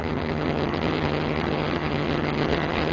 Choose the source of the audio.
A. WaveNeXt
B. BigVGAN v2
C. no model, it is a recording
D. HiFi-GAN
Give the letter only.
D